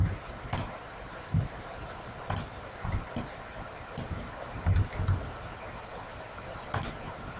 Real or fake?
real